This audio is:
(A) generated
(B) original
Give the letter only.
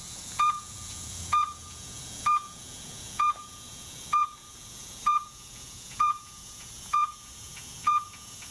A